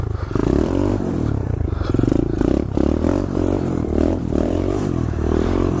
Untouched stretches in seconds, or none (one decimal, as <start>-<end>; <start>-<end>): none